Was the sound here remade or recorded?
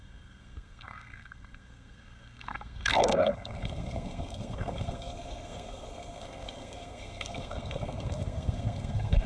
remade